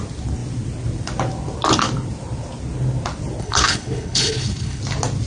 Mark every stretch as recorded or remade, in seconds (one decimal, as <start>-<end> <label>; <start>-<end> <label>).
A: 0.0-3.4 recorded; 3.4-4.8 remade; 4.8-5.3 recorded